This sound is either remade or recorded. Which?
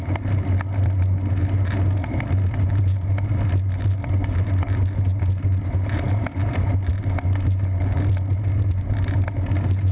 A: recorded